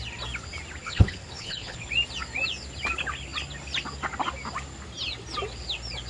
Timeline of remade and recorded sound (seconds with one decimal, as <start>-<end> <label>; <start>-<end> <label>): 0.0-0.8 recorded; 0.8-1.9 remade; 1.9-6.1 recorded